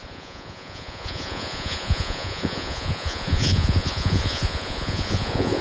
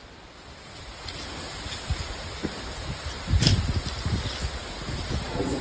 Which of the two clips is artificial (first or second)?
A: first